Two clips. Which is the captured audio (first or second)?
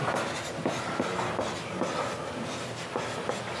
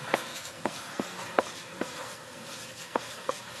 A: first